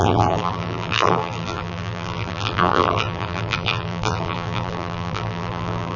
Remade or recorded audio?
remade